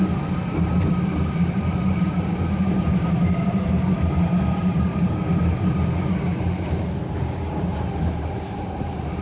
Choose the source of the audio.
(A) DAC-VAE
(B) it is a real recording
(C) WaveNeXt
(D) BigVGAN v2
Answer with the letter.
D